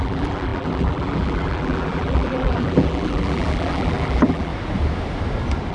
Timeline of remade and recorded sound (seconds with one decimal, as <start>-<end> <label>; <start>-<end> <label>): 0.0-4.5 remade; 4.5-5.7 recorded

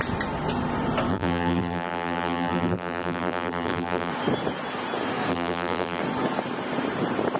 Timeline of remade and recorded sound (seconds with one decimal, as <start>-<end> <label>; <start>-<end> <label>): 0.0-1.1 recorded; 1.1-4.1 remade; 4.1-5.3 recorded; 5.3-6.0 remade; 6.0-7.4 recorded

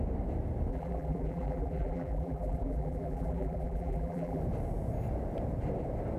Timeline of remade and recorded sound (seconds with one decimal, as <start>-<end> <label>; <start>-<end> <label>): 0.0-0.7 recorded; 0.7-4.4 remade; 4.4-6.2 recorded

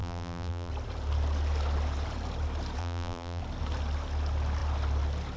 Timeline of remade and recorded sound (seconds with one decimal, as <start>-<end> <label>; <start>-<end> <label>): 0.0-0.7 remade; 0.7-2.8 recorded; 2.8-3.4 remade; 3.4-5.4 recorded

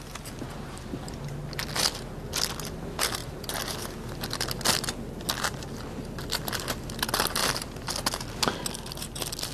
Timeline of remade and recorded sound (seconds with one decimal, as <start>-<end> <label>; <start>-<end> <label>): 0.0-7.4 recorded; 7.4-7.9 remade; 7.9-9.5 recorded

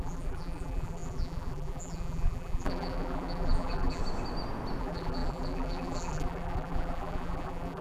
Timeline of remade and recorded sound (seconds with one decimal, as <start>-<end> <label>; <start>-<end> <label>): 0.0-4.0 remade; 4.0-4.8 recorded; 4.8-7.8 remade

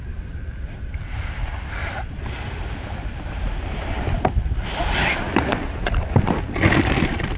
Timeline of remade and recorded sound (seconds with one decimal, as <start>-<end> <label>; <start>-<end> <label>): 0.0-1.8 remade; 1.8-3.3 recorded; 3.3-4.8 remade; 4.8-5.5 recorded; 5.5-7.4 remade